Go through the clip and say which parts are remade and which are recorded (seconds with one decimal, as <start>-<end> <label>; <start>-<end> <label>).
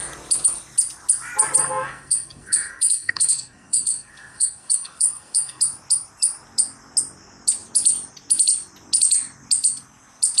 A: 0.0-1.6 recorded; 1.6-5.6 remade; 5.6-10.4 recorded